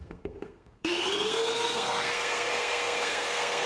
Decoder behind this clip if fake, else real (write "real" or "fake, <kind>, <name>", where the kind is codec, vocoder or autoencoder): fake, codec, SNAC